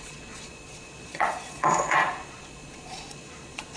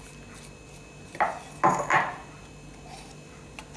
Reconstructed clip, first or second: first